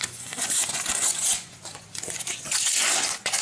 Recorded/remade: remade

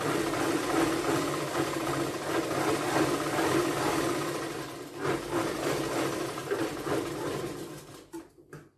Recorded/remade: recorded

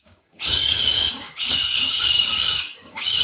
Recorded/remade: remade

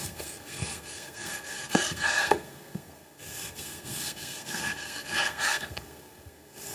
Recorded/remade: remade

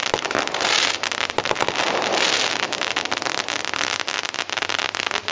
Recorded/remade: recorded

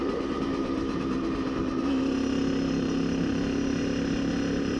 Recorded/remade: recorded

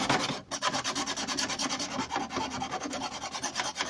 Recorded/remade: recorded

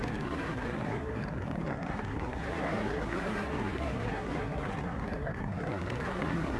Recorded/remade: remade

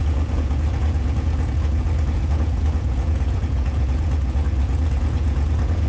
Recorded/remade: remade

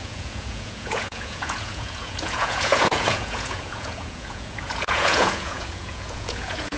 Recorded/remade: remade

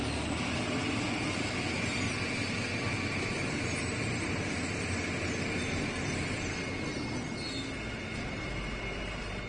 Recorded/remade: recorded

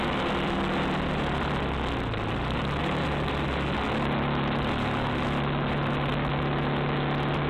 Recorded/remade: recorded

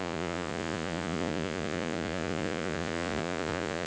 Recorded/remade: remade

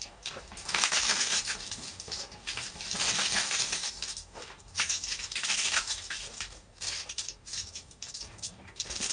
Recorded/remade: remade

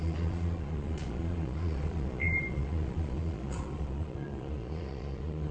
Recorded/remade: remade